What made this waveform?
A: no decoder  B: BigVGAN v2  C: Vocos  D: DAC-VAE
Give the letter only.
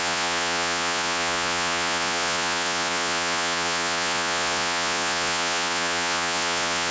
C